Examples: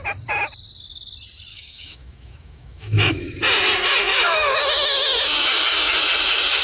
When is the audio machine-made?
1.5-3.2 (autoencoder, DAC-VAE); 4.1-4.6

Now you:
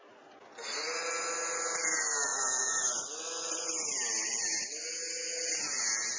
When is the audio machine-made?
none

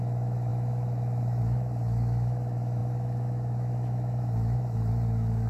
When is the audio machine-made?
0.0-5.5 (autoencoder, DAC-VAE)